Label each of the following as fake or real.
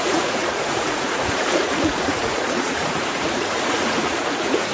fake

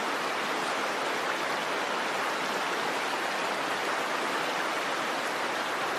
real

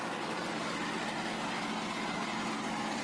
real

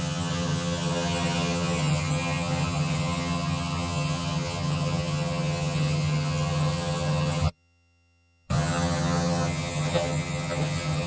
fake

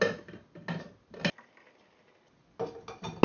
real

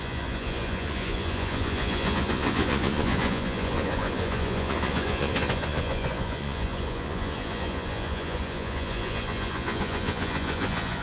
fake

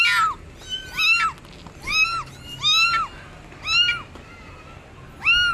real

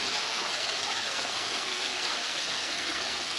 fake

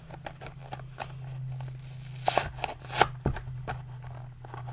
real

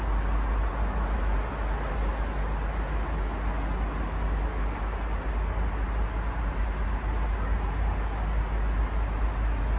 real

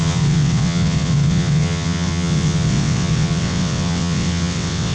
fake